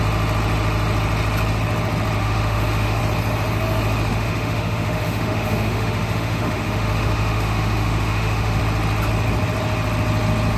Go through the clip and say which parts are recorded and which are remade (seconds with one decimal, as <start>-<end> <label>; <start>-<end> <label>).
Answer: 0.0-2.2 recorded; 2.2-3.0 remade; 3.0-4.1 recorded; 4.1-8.6 remade; 8.6-10.6 recorded